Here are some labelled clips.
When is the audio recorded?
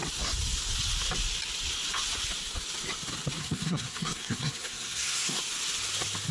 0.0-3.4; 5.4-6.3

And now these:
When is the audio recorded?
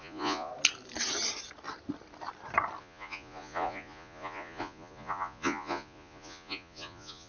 0.5-2.8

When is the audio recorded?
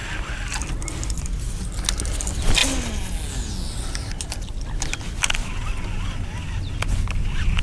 0.0-7.6